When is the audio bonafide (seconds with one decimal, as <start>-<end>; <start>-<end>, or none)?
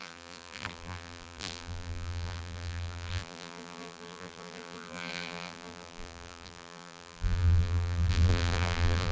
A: none